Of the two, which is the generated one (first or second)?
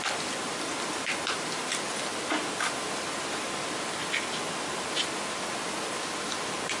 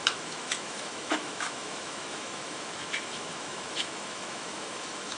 second